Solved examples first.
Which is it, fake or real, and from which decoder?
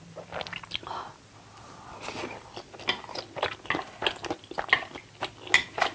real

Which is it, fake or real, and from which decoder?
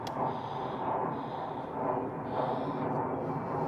real